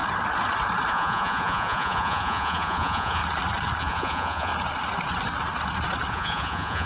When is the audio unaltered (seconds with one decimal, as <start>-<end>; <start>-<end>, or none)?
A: 0.0-0.9; 3.2-3.8; 4.5-6.1